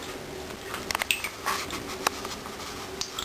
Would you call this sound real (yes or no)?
yes